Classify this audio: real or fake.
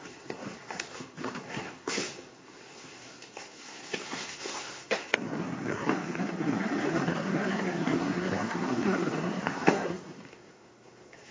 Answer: fake